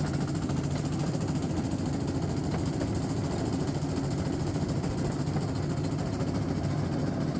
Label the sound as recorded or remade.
recorded